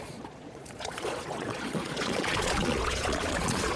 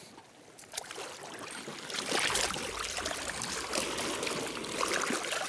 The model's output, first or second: first